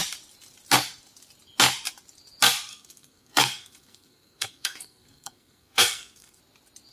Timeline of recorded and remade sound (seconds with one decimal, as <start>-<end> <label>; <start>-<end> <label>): 0.0-2.7 recorded; 2.7-6.4 remade; 6.4-6.9 recorded